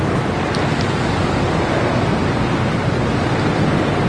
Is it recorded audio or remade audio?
recorded